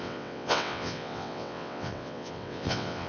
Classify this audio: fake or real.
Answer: fake